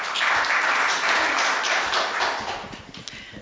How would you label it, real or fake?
real